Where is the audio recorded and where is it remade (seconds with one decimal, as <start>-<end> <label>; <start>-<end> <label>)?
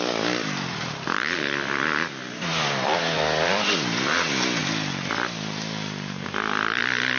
0.0-7.2 recorded